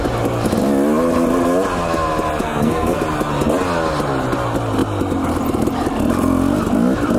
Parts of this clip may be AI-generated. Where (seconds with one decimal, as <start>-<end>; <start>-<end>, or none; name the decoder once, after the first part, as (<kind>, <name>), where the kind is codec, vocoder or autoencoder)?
2.4-3.0 (codec, SNAC)